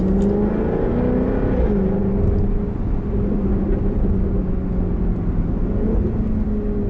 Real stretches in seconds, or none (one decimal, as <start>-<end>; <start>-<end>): 0.0-6.9